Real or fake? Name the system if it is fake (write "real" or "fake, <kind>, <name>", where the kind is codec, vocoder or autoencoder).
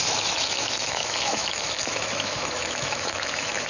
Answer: fake, autoencoder, DAC-VAE